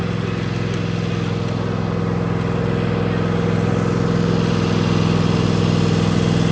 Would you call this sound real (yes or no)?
yes